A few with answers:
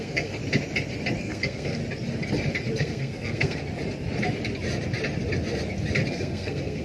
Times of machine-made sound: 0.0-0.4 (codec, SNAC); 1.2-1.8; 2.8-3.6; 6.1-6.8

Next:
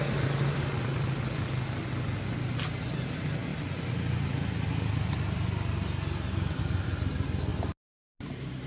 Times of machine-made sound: none